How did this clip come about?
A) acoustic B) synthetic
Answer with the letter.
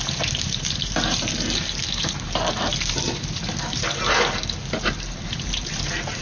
B